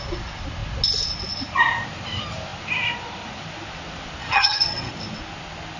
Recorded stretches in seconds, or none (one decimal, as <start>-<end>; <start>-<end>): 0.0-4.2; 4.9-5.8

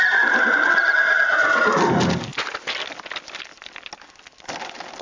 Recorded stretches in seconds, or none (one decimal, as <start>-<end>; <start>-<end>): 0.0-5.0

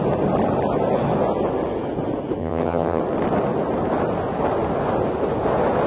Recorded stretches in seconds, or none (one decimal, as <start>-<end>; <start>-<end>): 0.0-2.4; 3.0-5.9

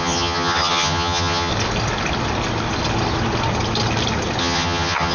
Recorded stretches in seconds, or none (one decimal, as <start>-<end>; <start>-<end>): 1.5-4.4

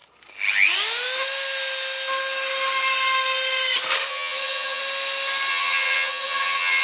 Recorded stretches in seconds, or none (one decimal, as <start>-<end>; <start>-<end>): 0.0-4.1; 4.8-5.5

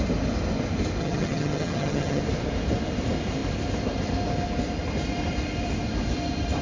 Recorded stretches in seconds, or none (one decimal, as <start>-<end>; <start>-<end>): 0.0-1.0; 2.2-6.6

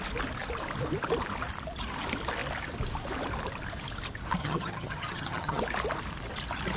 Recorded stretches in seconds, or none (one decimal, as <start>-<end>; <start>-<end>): 0.0-4.4; 5.6-6.8

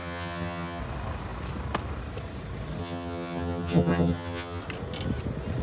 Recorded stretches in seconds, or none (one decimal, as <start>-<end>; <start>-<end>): 0.8-2.8; 4.6-5.6